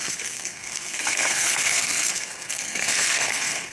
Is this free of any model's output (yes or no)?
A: no